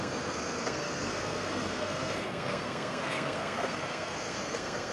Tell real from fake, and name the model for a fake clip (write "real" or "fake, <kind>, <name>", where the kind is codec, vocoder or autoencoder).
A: fake, codec, SNAC